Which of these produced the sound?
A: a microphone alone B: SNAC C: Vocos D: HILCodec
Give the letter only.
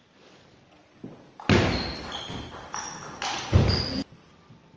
A